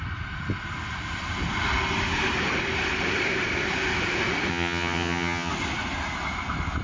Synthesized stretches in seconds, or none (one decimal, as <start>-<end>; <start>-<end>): 4.5-5.5